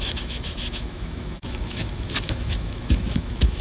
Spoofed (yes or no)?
yes